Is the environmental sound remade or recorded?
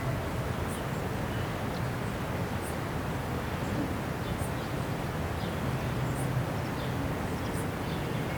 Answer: recorded